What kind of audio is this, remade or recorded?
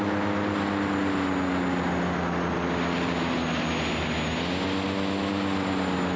recorded